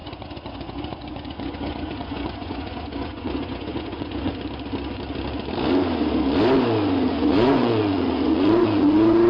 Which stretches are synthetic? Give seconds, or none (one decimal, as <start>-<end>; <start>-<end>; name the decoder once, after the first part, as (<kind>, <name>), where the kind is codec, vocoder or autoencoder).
0.0-4.3 (vocoder, Vocos); 7.1-9.3